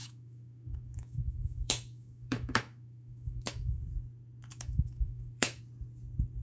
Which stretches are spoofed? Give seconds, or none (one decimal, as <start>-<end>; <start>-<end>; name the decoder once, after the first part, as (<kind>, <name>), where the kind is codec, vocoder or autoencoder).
0.0-3.8 (autoencoder, DAC-VAE); 4.5-5.6